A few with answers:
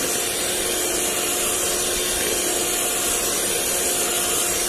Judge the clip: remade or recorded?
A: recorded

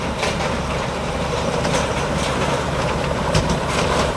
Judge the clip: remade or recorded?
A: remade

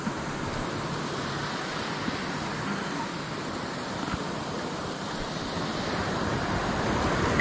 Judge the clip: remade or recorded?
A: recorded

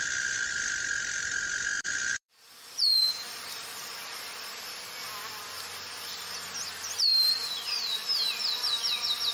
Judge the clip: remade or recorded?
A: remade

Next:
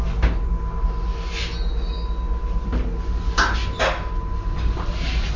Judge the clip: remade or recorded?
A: recorded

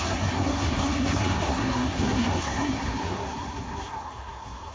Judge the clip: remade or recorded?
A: remade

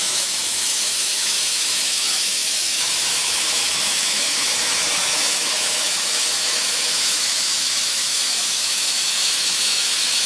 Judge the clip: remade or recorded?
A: remade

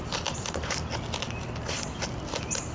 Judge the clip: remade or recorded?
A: recorded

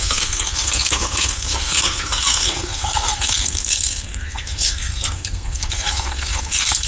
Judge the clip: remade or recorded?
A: remade